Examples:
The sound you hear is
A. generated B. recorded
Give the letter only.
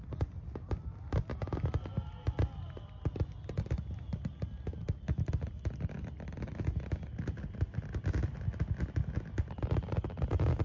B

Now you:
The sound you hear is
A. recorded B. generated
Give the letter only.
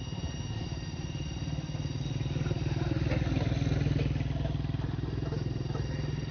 A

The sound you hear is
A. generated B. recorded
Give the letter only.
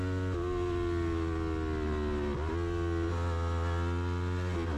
B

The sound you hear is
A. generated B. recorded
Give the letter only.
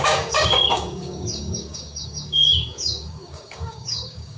A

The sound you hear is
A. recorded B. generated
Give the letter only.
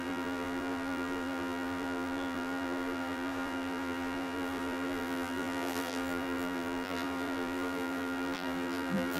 B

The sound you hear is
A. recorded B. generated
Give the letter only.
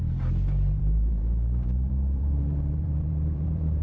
B